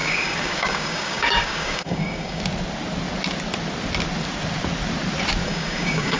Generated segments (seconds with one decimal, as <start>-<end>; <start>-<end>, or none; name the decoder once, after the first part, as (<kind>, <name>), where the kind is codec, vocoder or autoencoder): 0.0-2.4 (codec, DAC); 5.4-6.2